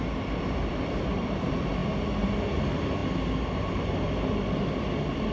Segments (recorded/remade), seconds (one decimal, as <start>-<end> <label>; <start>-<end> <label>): 0.0-5.3 recorded